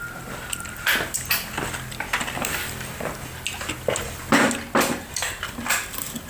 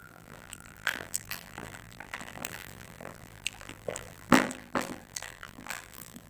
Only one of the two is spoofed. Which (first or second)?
second